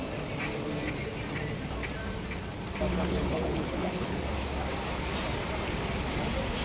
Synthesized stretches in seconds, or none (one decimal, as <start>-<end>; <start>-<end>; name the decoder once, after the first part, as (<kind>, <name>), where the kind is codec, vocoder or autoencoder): 2.9-4.2 (codec, HILCodec)